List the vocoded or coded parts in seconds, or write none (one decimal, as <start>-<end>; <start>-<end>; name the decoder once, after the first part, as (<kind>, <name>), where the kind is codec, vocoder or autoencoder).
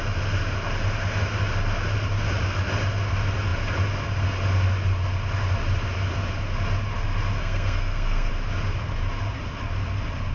7.4-8.3 (codec, SNAC)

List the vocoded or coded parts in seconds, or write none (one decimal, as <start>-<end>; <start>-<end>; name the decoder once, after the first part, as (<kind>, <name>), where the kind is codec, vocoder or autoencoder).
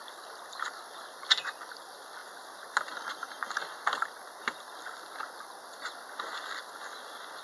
none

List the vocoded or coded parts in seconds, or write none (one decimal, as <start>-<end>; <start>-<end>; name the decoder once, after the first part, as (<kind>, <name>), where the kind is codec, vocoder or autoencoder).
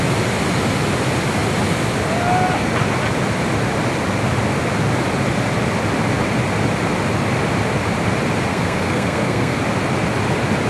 8.5-9.6 (codec, SNAC)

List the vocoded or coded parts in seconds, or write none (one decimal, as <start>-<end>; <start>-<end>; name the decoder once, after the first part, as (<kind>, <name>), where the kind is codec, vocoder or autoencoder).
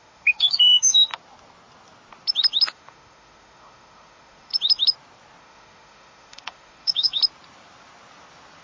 0.0-1.1 (autoencoder, DAC-VAE); 2.7-4.5; 5.4-7.2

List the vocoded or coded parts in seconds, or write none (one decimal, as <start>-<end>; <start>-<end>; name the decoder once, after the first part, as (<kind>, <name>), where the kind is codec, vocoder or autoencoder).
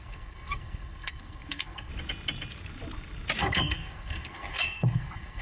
0.0-1.9 (codec, SNAC); 3.4-5.4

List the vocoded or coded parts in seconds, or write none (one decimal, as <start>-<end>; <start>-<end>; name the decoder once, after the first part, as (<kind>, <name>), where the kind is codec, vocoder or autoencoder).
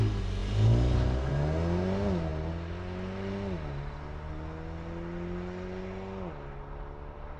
none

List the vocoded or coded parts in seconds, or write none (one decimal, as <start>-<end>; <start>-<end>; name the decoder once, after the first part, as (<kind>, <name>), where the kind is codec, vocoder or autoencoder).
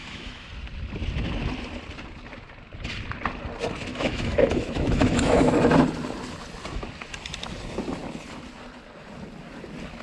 0.0-0.5 (autoencoder, DAC-VAE); 3.9-5.5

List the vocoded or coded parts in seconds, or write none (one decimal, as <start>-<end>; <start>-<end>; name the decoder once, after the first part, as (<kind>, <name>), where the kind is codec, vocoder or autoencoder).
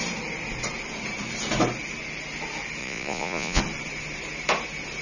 2.8-3.6 (vocoder, Vocos)